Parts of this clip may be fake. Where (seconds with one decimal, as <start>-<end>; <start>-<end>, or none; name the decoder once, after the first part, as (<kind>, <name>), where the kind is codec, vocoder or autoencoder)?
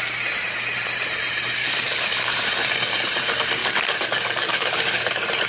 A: 1.6-2.4 (codec, DAC); 3.6-5.1